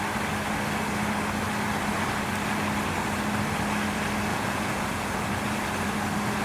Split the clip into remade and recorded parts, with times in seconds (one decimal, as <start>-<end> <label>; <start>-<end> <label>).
0.0-4.3 recorded; 4.3-5.3 remade; 5.3-6.4 recorded